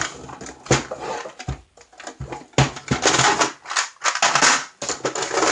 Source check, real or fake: real